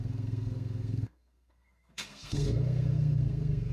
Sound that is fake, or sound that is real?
fake